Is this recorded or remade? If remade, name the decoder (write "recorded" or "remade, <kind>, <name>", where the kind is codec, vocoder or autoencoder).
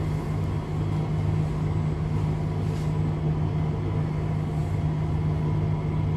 recorded